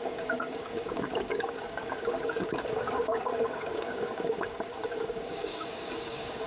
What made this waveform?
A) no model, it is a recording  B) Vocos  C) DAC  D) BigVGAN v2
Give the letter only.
C